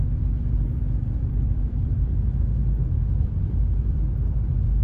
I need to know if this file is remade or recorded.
remade